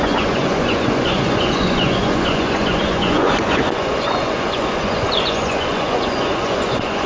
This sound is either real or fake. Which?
fake